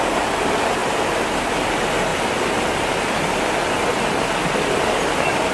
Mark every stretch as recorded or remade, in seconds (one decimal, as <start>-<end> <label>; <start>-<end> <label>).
0.0-5.5 recorded